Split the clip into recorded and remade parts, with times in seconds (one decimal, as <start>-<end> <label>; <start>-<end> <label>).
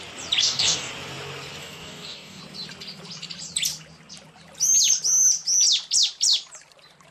0.0-0.4 recorded; 0.4-0.9 remade; 0.9-1.6 recorded; 1.6-2.4 remade; 2.4-7.1 recorded